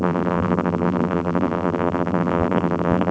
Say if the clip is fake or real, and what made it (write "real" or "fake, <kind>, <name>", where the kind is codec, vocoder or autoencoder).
fake, vocoder, BigVGAN v2